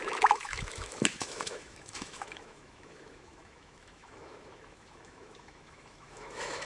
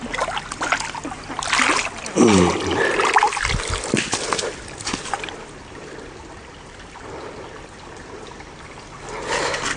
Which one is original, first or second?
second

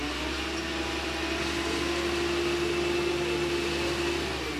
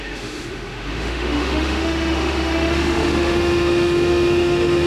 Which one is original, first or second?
first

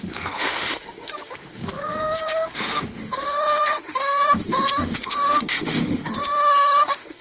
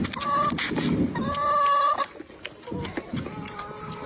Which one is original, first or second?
second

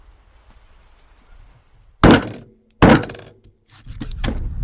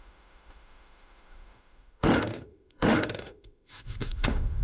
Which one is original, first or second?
first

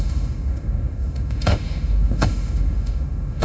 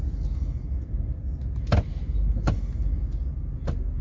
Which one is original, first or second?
second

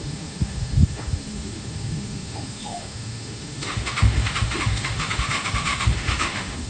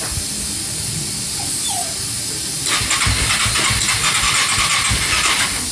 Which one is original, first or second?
second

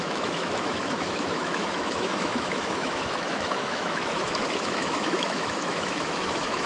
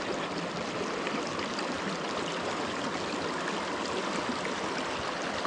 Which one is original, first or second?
second